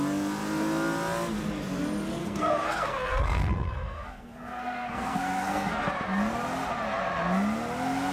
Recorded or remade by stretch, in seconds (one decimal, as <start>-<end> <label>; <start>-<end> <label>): 0.0-2.2 recorded; 2.2-5.9 remade; 5.9-8.1 recorded